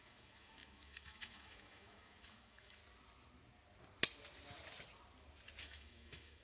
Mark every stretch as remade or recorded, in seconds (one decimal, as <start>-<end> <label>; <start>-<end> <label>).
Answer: 0.0-2.8 remade; 2.8-5.6 recorded; 5.6-6.4 remade

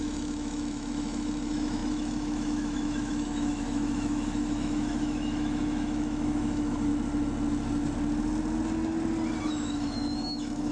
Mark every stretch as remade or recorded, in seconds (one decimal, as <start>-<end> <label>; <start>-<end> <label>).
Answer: 0.0-6.9 remade; 6.9-9.4 recorded; 9.4-10.7 remade

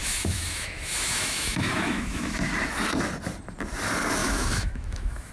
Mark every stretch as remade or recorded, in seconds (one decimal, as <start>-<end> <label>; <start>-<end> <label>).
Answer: 0.0-2.5 remade; 2.5-4.2 recorded; 4.2-5.3 remade

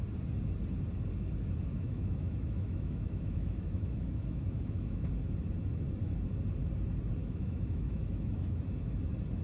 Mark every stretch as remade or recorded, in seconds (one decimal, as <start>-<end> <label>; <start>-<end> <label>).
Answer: 0.0-1.7 recorded; 1.7-5.1 remade; 5.1-7.2 recorded; 7.2-8.6 remade; 8.6-9.4 recorded

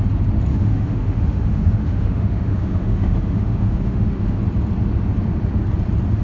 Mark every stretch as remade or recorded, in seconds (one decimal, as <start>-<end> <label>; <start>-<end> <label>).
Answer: 0.0-0.5 recorded; 0.5-4.2 remade; 4.2-6.2 recorded